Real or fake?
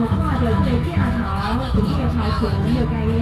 fake